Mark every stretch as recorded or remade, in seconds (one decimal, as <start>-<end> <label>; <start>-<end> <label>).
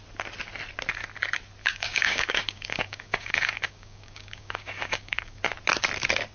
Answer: 0.0-1.6 recorded; 1.6-5.4 remade; 5.4-6.3 recorded